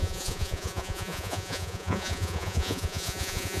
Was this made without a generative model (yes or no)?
no